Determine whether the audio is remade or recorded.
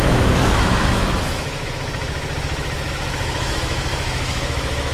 remade